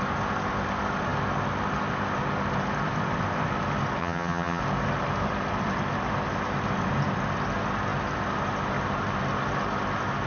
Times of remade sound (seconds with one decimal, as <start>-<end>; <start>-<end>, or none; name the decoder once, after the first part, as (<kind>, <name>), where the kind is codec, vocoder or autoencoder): 4.0-4.6 (vocoder, HiFi-GAN)

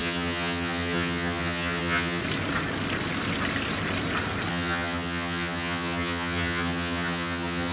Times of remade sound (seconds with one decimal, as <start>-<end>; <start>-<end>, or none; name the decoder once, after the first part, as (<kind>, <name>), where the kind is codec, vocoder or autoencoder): 0.0-2.2 (vocoder, HiFi-GAN); 4.5-7.7

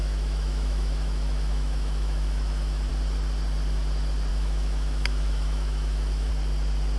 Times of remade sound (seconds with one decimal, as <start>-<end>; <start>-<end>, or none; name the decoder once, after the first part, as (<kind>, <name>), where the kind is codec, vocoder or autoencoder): 0.0-2.9 (autoencoder, DAC-VAE); 4.3-6.3

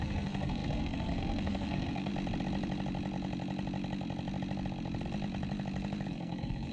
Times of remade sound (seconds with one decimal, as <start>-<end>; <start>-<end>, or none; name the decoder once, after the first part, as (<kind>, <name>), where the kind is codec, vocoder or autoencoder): 0.0-2.1 (codec, SNAC); 6.1-6.7

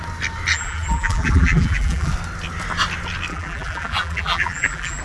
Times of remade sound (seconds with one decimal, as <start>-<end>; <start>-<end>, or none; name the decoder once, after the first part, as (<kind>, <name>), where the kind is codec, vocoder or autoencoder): 0.5-2.1 (vocoder, BigVGAN v2); 3.3-5.0

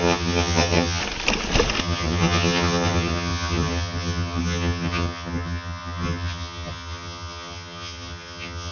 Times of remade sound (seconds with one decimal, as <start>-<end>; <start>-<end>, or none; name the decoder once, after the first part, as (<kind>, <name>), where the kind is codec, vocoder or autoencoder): 0.0-1.0 (vocoder, HiFi-GAN); 1.8-8.7

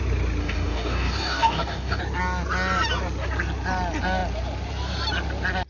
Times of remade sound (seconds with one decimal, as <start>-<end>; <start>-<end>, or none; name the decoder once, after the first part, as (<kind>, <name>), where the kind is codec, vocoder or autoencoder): 0.4-2.0 (codec, DAC)

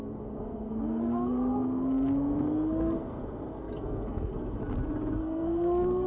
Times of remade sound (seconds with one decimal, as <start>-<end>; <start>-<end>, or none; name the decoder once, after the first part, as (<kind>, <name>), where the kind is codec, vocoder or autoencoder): 0.0-4.6 (codec, SNAC); 5.2-6.1